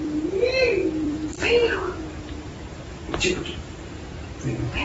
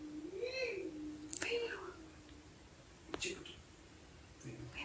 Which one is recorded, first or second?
second